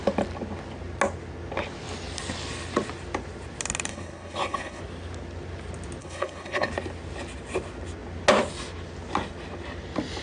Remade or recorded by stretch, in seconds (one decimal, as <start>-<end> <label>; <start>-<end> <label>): 0.0-3.9 recorded; 3.9-4.8 remade; 4.8-6.0 recorded; 6.0-6.7 remade; 6.7-10.2 recorded